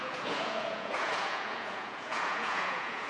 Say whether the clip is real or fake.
fake